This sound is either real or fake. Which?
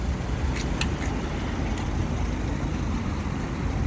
real